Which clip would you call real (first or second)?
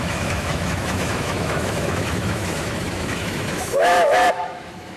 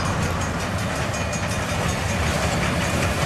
second